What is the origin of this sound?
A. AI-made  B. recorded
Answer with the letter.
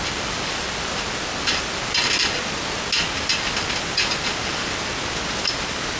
B